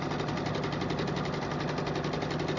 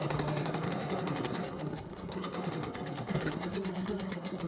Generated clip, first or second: second